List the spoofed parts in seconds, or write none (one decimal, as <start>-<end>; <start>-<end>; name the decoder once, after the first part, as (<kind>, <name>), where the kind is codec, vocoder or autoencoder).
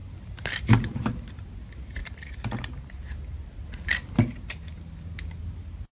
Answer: 0.0-1.0 (vocoder, BigVGAN v2); 2.0-3.0